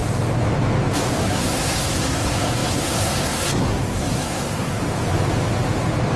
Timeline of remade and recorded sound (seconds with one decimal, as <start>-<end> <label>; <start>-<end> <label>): 0.0-1.2 recorded; 1.2-4.8 remade; 4.8-6.2 recorded